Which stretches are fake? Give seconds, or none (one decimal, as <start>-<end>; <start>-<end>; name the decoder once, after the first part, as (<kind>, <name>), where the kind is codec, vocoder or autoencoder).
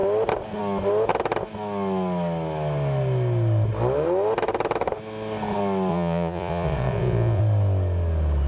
5.9-7.4 (vocoder, Vocos)